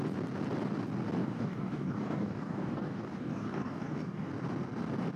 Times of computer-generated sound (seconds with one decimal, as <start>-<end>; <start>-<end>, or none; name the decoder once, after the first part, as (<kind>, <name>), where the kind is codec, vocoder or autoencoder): 1.2-4.3 (codec, DAC)